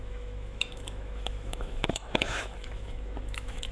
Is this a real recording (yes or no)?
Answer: no